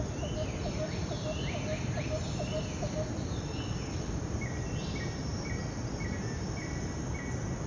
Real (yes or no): yes